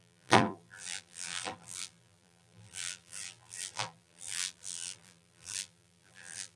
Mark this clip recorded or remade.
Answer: remade